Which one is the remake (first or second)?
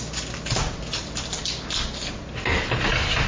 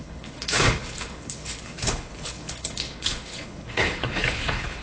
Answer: second